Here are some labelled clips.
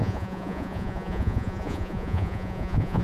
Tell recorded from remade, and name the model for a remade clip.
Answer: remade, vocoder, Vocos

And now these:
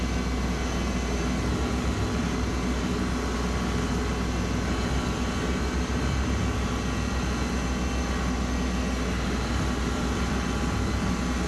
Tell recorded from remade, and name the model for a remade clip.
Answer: recorded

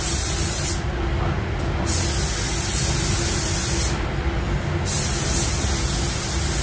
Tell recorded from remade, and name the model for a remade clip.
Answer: recorded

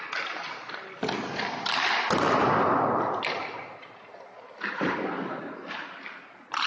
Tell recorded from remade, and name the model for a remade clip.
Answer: recorded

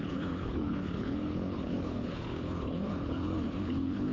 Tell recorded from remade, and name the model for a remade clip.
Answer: remade, codec, HILCodec